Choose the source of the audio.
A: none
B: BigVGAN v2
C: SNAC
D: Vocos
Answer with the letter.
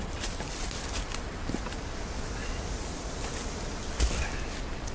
A